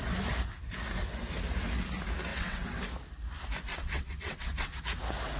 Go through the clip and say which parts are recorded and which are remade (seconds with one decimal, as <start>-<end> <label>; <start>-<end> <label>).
0.0-2.3 recorded; 2.3-2.8 remade; 2.8-3.7 recorded; 3.7-4.8 remade; 4.8-5.4 recorded